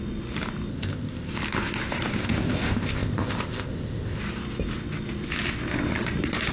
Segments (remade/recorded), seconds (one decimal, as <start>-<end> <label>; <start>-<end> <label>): 0.0-0.7 recorded; 0.7-1.3 remade; 1.3-2.2 recorded; 2.2-4.2 remade; 4.2-6.5 recorded